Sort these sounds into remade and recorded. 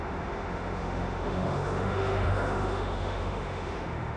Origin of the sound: remade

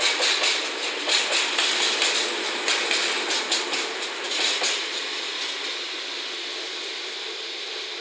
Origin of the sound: recorded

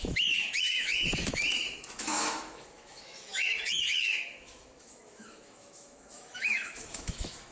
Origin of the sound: remade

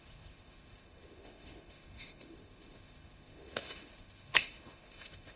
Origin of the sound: remade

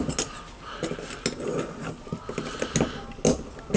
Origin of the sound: recorded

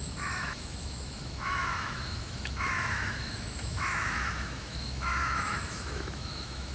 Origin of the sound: remade